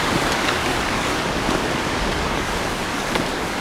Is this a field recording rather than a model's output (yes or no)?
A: no